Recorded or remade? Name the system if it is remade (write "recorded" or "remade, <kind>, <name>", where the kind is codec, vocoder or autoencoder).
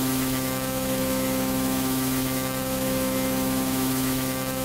remade, autoencoder, DAC-VAE